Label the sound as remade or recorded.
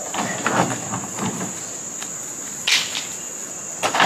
recorded